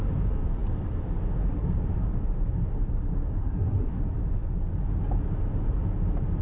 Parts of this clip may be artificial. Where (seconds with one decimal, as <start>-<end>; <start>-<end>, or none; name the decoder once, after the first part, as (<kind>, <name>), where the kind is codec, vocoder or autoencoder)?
3.4-4.0 (codec, SNAC)